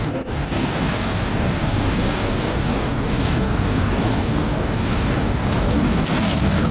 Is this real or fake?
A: fake